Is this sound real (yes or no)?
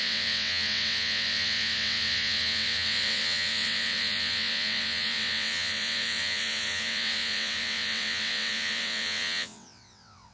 no